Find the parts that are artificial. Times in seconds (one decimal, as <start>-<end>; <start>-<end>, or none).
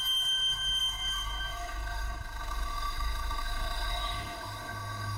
0.0-5.2